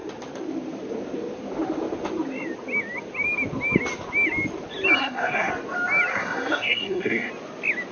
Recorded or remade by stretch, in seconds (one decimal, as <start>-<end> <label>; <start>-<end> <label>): 0.0-5.0 recorded; 5.0-5.5 remade; 5.5-6.1 recorded; 6.1-7.3 remade; 7.3-7.9 recorded